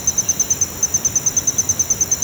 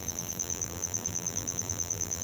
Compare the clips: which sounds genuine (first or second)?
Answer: first